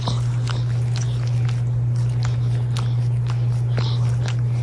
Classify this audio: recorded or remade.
recorded